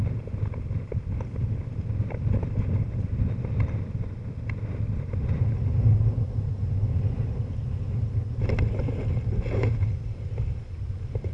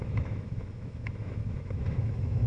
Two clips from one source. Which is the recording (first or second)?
first